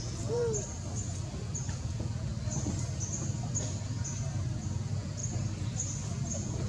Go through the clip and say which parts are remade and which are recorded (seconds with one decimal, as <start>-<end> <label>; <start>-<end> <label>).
0.0-0.4 remade; 0.4-1.7 recorded; 1.7-2.3 remade; 2.3-4.7 recorded; 4.7-5.2 remade; 5.2-6.3 recorded; 6.3-6.7 remade

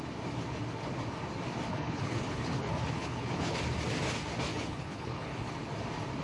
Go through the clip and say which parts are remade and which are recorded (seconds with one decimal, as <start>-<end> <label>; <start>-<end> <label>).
0.0-1.7 recorded; 1.7-3.6 remade; 3.6-4.5 recorded; 4.5-5.5 remade; 5.5-6.2 recorded

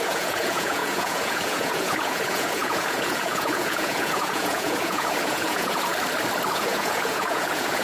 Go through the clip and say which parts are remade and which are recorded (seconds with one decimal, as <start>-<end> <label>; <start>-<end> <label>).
0.0-5.9 remade; 5.9-6.5 recorded; 6.5-7.8 remade

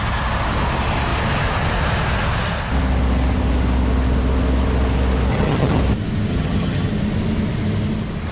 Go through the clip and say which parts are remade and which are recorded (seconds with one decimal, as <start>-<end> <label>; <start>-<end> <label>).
0.0-5.3 recorded; 5.3-5.8 remade; 5.8-6.3 recorded; 6.3-6.9 remade; 6.9-8.3 recorded